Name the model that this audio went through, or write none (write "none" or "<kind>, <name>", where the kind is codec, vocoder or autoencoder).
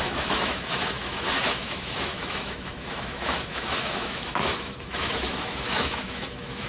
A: autoencoder, DAC-VAE